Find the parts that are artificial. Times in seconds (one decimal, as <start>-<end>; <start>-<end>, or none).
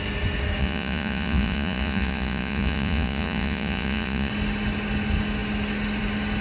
0.6-4.3